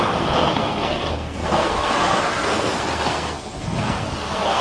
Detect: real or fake fake